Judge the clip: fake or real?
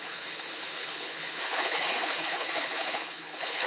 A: fake